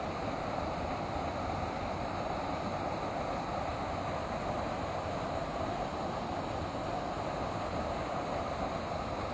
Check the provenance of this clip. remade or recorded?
recorded